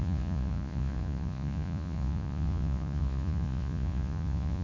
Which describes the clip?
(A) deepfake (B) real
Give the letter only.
A